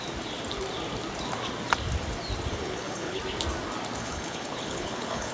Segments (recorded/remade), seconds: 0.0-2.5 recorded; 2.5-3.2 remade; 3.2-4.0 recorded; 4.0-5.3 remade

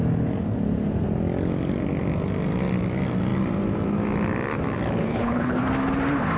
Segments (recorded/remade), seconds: 0.0-5.0 recorded; 5.0-5.6 remade; 5.6-6.4 recorded